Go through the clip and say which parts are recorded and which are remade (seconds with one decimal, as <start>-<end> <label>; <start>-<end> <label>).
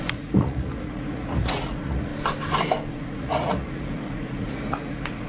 0.0-2.1 remade; 2.1-2.9 recorded; 2.9-5.3 remade